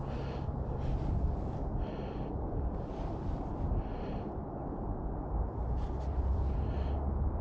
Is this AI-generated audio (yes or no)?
no